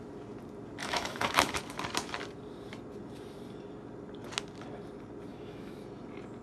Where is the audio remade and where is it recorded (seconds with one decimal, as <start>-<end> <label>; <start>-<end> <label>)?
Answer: 0.0-0.8 recorded; 0.8-1.6 remade; 1.6-5.3 recorded; 5.3-5.8 remade; 5.8-6.4 recorded